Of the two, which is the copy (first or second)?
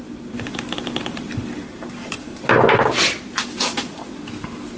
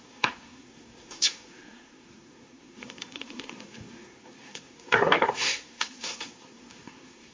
second